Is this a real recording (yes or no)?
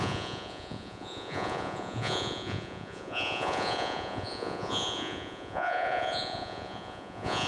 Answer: no